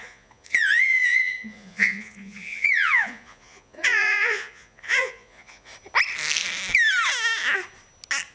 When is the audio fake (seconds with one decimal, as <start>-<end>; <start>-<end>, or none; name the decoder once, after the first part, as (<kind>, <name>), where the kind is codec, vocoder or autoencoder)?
0.0-5.7 (vocoder, Vocos)